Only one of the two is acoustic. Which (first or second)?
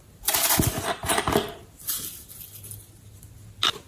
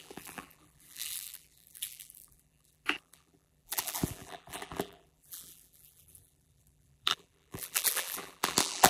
first